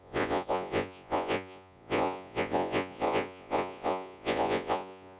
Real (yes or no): no